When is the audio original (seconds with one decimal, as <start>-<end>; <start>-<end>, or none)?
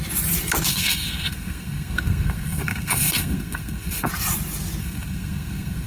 0.0-0.7; 4.1-4.8